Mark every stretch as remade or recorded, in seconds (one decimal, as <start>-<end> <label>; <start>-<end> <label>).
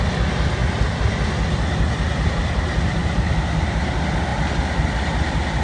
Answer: 0.0-5.6 recorded